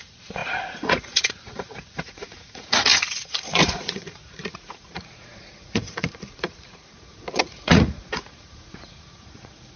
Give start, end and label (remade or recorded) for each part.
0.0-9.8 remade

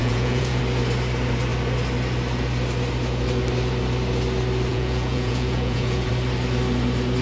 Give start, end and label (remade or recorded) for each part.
0.0-0.6 remade; 0.6-4.7 recorded; 4.7-6.1 remade; 6.1-7.2 recorded

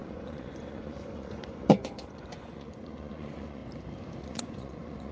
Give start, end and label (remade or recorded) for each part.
0.0-3.6 remade; 3.6-4.2 recorded; 4.2-5.1 remade

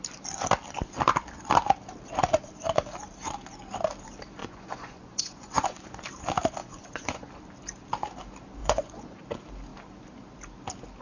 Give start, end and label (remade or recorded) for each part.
0.0-4.4 recorded; 4.4-6.0 remade; 6.0-6.6 recorded; 6.6-7.3 remade; 7.3-8.6 recorded; 8.6-9.2 remade; 9.2-11.0 recorded